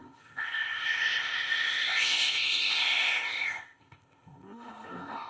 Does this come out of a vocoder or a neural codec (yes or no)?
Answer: yes